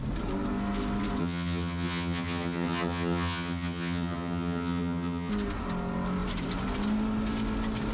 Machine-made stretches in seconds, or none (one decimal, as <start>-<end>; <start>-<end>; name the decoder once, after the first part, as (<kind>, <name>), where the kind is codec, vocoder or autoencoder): 1.2-5.3 (vocoder, HiFi-GAN)